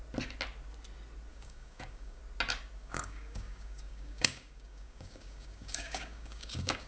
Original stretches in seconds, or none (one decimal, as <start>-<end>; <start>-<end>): 0.0-1.3; 2.2-2.8